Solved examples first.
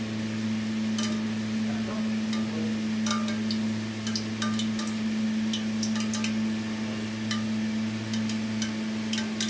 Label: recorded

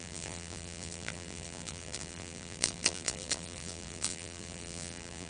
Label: remade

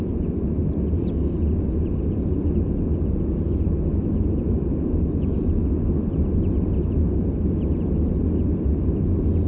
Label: recorded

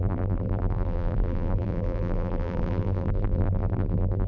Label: remade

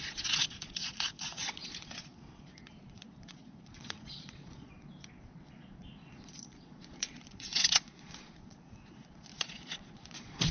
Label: remade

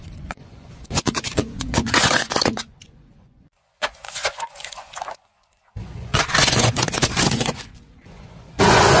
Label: remade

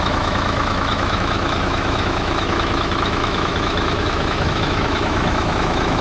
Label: remade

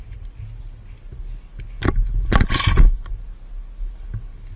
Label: recorded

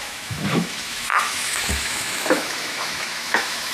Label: remade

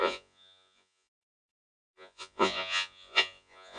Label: remade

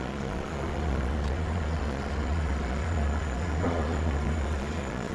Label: remade